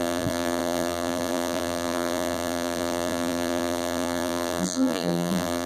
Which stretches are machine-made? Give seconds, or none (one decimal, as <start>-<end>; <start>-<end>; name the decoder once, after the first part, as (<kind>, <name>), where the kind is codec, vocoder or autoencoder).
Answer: 0.0-5.7 (vocoder, BigVGAN v2)